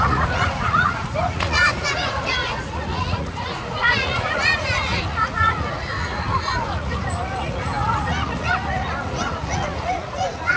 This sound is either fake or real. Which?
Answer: fake